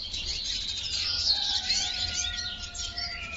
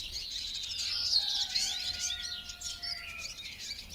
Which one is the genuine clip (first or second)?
second